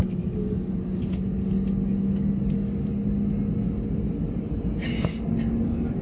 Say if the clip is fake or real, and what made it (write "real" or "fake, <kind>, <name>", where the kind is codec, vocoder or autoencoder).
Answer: real